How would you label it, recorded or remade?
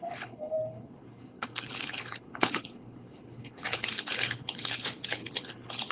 remade